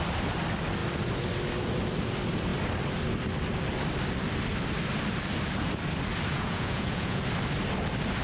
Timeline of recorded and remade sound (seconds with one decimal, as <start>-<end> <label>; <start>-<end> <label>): 0.0-6.3 recorded; 6.3-7.2 remade; 7.2-8.2 recorded